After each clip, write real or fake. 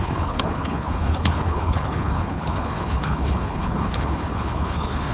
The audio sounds fake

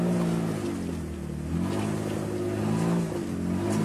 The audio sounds real